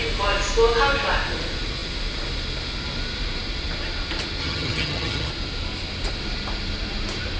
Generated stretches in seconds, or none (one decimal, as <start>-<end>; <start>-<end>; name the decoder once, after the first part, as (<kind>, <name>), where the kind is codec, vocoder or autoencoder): 4.4-5.3 (vocoder, HiFi-GAN)